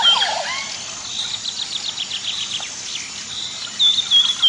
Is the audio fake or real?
real